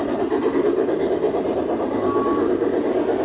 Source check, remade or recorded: recorded